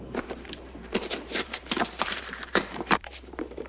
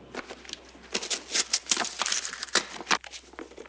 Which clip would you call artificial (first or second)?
first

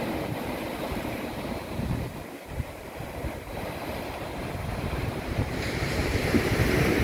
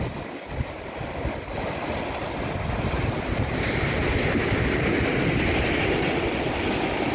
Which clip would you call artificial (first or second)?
first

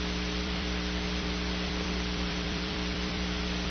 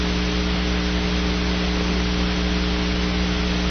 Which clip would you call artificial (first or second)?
first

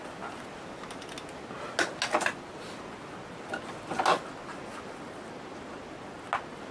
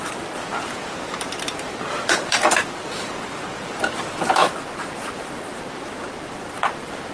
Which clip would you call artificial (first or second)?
second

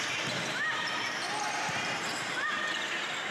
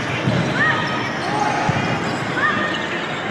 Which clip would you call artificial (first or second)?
first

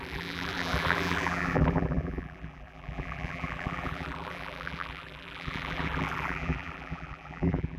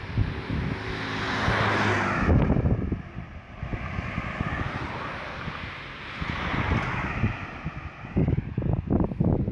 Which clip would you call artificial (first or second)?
first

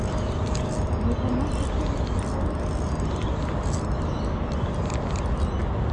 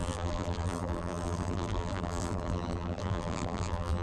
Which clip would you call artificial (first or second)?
second